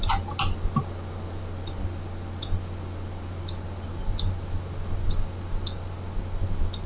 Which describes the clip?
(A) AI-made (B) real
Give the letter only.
B